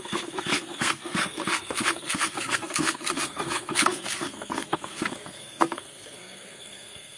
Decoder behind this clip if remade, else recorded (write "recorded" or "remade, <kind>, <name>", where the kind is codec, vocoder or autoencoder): remade, codec, SNAC